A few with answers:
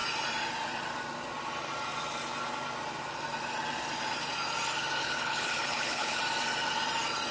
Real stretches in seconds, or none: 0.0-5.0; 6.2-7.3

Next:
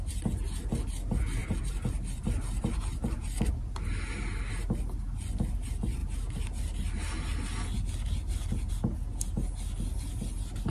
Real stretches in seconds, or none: 0.0-1.4; 3.5-10.7

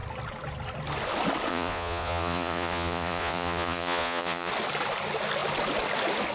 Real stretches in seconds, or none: 0.0-1.5; 4.5-6.3

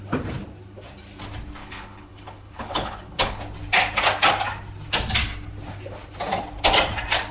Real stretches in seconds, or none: 0.0-1.6; 3.4-7.3